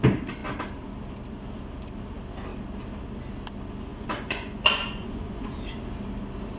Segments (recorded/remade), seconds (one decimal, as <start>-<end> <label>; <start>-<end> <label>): 0.0-3.9 recorded; 3.9-5.5 remade; 5.5-6.6 recorded